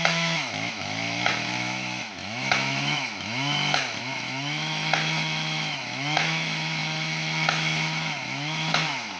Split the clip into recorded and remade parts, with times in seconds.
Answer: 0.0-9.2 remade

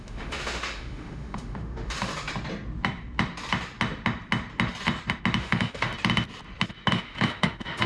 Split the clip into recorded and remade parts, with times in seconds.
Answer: 0.0-2.1 remade; 2.1-5.4 recorded; 5.4-5.9 remade; 5.9-6.9 recorded; 6.9-7.9 remade

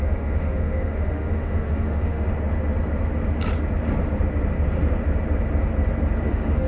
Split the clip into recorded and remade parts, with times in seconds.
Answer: 0.0-2.3 remade; 2.3-6.3 recorded; 6.3-6.7 remade

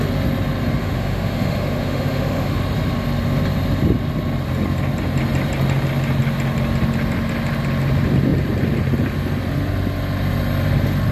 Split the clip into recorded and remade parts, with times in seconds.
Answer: 0.0-0.8 recorded; 0.8-2.6 remade; 2.6-11.1 recorded

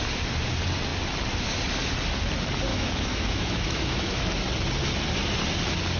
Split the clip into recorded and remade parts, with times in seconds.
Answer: 0.0-2.7 recorded; 2.7-4.2 remade; 4.2-6.0 recorded

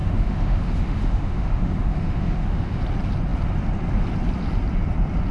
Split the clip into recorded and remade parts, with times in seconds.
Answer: 0.0-2.8 remade; 2.8-5.3 recorded

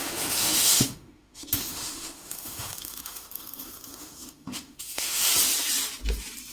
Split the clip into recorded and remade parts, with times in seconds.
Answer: 0.0-5.3 remade; 5.3-6.5 recorded

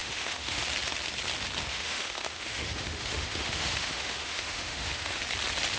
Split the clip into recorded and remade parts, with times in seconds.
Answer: 0.0-0.6 remade; 0.6-1.7 recorded; 1.7-5.2 remade; 5.2-5.8 recorded